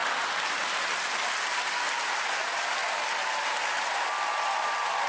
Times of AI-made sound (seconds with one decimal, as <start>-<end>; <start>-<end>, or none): none